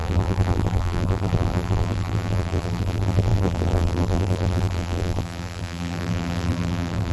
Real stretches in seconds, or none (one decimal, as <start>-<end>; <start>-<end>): none